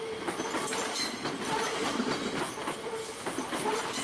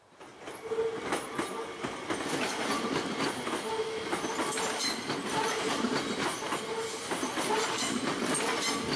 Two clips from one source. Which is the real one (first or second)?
second